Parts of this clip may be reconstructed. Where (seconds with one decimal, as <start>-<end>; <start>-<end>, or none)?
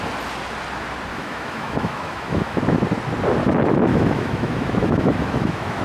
1.1-2.6; 3.9-5.8